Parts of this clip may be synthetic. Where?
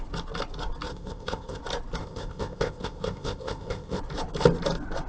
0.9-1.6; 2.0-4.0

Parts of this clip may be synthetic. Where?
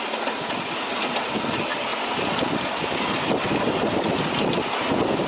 none